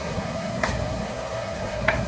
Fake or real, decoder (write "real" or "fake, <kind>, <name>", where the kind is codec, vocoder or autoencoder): fake, codec, SNAC